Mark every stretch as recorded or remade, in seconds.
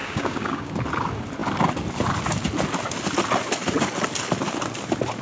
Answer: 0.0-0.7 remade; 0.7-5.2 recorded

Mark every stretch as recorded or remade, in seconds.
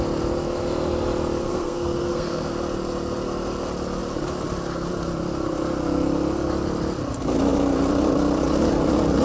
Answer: 0.0-1.4 recorded; 1.4-2.5 remade; 2.5-9.2 recorded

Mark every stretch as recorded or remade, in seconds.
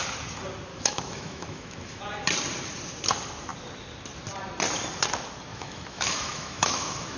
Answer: 0.0-0.7 recorded; 0.7-2.0 remade; 2.0-5.5 recorded; 5.5-7.2 remade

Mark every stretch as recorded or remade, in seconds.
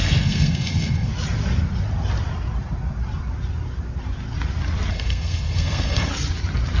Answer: 0.0-1.1 remade; 1.1-4.9 recorded; 4.9-6.1 remade; 6.1-6.8 recorded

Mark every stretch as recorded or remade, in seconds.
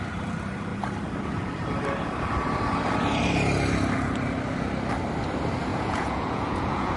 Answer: 0.0-5.7 recorded; 5.7-7.0 remade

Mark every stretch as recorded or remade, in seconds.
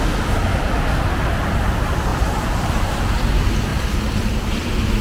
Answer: 0.0-2.1 recorded; 2.1-3.3 remade; 3.3-3.7 recorded; 3.7-4.4 remade; 4.4-5.0 recorded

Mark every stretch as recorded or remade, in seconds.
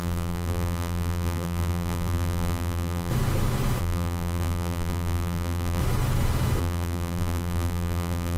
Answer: 0.0-3.1 remade; 3.1-3.8 recorded; 3.8-5.8 remade; 5.8-6.6 recorded; 6.6-8.4 remade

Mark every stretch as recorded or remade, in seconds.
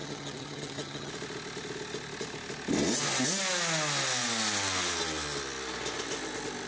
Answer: 0.0-1.1 remade; 1.1-6.7 recorded